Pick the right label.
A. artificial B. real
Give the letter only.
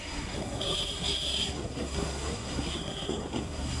A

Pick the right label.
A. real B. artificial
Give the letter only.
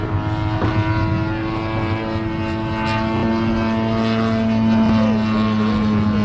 A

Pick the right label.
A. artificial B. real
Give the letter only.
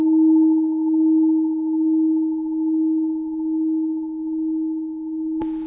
A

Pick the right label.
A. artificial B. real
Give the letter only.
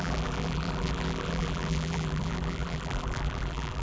A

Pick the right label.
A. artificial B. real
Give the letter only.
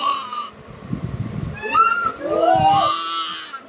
B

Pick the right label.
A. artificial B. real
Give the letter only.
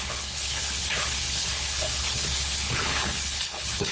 A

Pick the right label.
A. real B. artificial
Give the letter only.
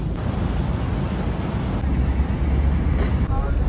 A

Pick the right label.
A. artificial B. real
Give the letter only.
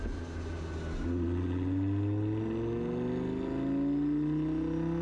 B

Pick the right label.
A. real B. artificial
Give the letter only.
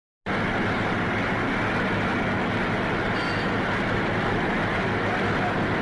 A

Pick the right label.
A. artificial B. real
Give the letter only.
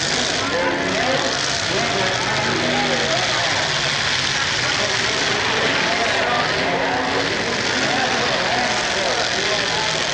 B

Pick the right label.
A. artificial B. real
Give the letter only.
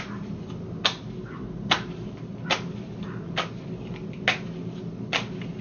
B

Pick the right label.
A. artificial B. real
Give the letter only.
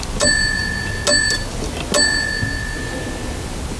B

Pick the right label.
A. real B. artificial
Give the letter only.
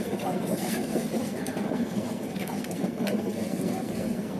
B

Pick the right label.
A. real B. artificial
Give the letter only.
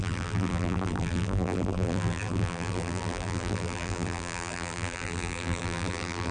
B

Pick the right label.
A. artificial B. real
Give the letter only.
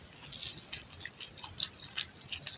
B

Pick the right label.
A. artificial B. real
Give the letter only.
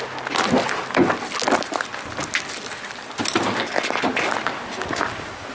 B